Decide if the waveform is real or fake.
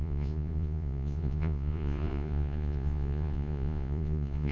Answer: fake